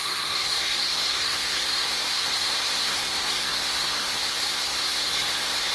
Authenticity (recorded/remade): remade